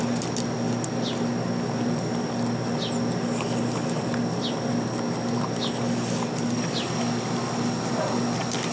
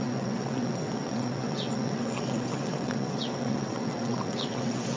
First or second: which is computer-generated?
second